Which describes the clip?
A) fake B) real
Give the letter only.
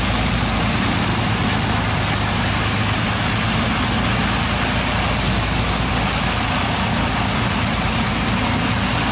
B